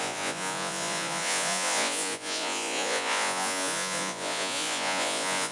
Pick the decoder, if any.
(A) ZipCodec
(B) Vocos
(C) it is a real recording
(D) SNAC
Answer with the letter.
B